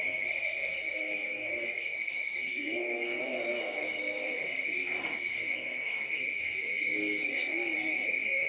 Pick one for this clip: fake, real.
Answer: fake